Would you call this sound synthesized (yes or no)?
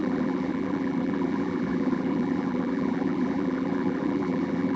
yes